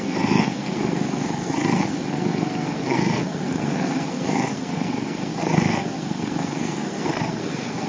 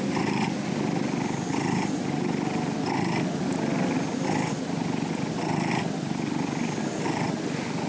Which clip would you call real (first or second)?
second